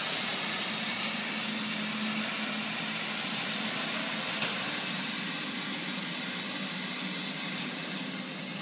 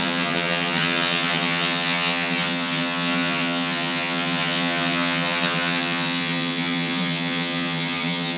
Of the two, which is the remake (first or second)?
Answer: second